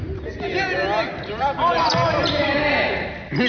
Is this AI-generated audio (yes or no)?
no